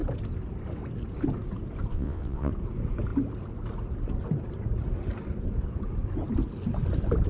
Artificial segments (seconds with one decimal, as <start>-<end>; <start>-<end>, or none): 1.9-2.5